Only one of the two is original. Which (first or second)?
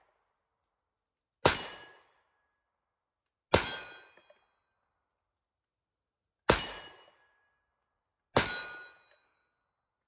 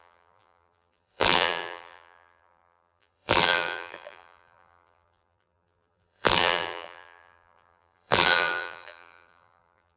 first